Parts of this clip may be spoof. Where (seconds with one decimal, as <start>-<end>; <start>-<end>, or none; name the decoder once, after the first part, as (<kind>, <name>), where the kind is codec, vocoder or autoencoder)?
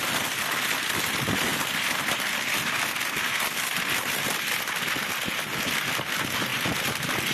none